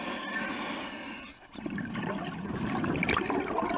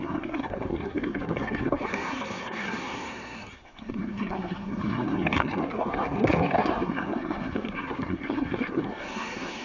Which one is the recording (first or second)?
first